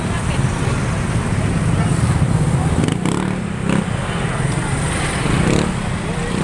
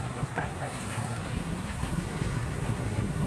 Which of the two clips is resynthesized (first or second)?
second